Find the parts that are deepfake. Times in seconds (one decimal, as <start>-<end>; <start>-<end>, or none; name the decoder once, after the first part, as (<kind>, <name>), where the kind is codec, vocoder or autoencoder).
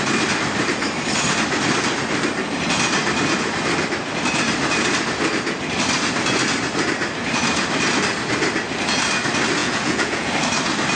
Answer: 9.6-10.3 (vocoder, Vocos)